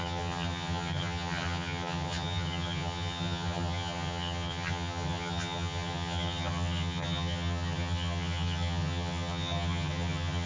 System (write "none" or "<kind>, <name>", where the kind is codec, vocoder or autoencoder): vocoder, HiFi-GAN